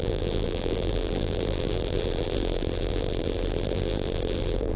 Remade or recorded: remade